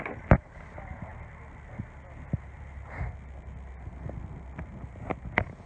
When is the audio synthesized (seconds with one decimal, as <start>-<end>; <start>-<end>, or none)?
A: none